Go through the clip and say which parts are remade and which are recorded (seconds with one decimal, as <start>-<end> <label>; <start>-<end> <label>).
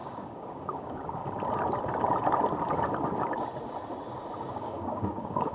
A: 0.0-1.2 remade; 1.2-4.5 recorded; 4.5-5.5 remade